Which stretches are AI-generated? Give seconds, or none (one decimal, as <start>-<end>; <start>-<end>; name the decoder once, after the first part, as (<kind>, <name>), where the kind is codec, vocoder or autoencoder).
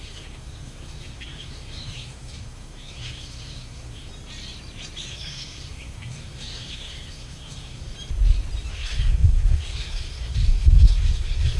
0.0-4.1 (codec, SNAC); 5.1-7.9; 8.7-11.6